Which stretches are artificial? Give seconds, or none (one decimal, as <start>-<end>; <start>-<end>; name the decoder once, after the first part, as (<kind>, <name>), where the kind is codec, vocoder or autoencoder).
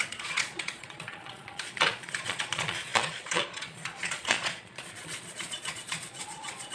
0.0-6.7 (vocoder, Vocos)